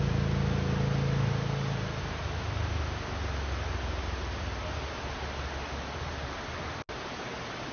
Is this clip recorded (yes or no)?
yes